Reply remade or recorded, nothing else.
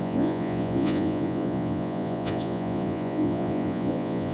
remade